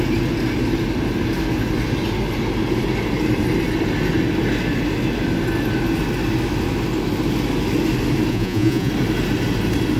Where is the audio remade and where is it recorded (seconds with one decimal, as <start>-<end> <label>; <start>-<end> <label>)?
0.0-8.3 recorded; 8.3-8.9 remade; 8.9-10.0 recorded